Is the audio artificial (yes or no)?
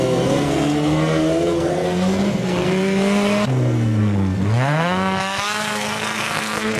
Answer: yes